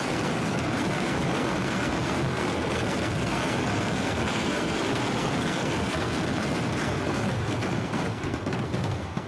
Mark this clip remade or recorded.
remade